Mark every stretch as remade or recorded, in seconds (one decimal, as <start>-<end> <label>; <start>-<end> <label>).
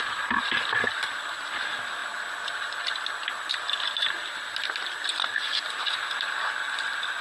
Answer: 0.0-7.2 recorded